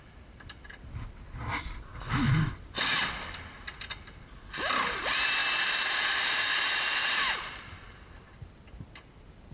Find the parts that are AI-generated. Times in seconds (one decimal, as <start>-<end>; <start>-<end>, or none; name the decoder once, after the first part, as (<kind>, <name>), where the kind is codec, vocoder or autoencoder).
none